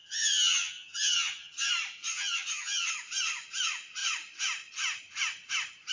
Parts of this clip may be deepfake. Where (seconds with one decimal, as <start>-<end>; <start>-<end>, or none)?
0.0-1.7; 2.1-2.9